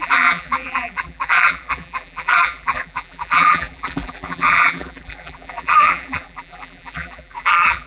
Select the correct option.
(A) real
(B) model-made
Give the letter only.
B